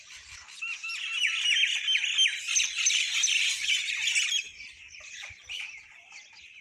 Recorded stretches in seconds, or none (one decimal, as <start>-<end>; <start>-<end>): 0.8-2.5